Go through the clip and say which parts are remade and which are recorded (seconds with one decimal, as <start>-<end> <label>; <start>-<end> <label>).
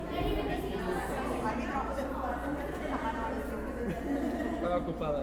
0.0-2.9 remade; 2.9-5.2 recorded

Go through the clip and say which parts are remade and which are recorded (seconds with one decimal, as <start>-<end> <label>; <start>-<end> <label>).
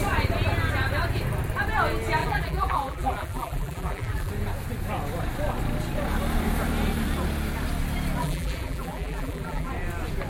0.0-2.2 recorded; 2.2-4.3 remade; 4.3-8.2 recorded; 8.2-9.7 remade; 9.7-10.3 recorded